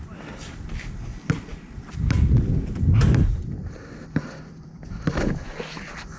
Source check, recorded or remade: recorded